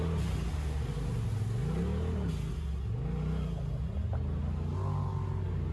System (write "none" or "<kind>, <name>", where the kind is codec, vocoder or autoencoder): none